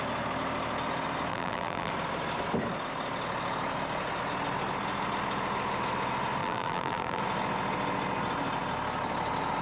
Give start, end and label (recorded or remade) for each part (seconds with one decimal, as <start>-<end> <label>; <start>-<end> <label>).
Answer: 0.0-1.3 recorded; 1.3-1.9 remade; 1.9-6.4 recorded; 6.4-7.2 remade; 7.2-9.6 recorded